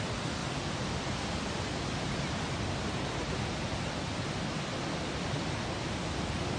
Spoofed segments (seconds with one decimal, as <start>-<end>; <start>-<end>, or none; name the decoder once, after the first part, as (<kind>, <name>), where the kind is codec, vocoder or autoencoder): none